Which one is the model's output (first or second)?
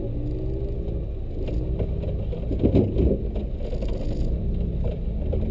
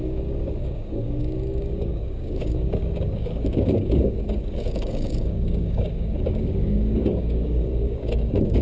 second